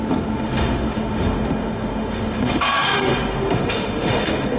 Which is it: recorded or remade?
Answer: remade